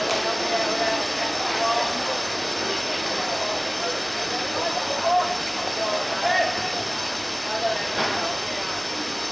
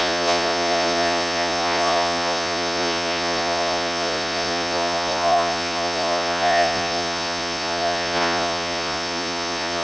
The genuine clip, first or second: first